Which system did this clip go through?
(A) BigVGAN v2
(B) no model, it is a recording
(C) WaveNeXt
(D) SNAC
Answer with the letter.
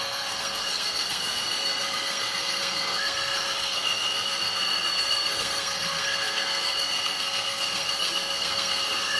D